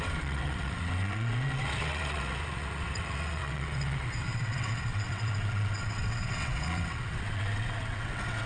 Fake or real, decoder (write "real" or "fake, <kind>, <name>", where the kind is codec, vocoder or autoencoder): fake, vocoder, WaveNeXt